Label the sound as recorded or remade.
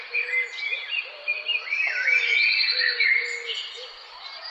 recorded